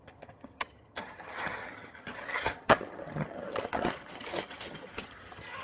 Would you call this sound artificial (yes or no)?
yes